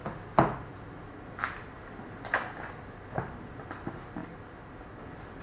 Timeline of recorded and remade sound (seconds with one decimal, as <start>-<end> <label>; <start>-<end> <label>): 0.0-5.4 recorded